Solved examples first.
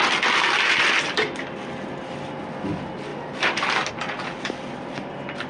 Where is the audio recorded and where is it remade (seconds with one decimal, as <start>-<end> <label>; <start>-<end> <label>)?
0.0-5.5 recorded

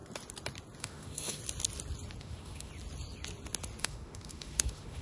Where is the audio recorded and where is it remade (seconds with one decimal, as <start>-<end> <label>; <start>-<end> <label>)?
0.0-0.8 recorded; 0.8-1.4 remade; 1.4-2.2 recorded; 2.2-2.7 remade; 2.7-3.8 recorded; 3.8-5.0 remade

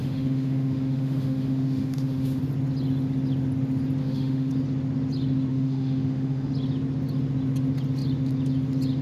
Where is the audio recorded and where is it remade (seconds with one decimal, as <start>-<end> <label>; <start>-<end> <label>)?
0.0-2.4 remade; 2.4-4.0 recorded; 4.0-4.5 remade; 4.5-5.5 recorded; 5.5-6.5 remade; 6.5-9.0 recorded